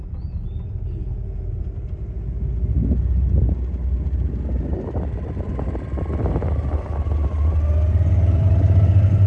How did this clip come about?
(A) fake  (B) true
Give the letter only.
B